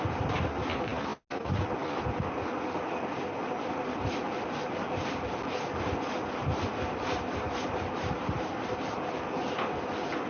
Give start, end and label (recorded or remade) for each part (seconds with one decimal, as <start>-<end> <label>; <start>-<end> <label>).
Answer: 0.0-6.4 recorded; 6.4-8.8 remade; 8.8-10.3 recorded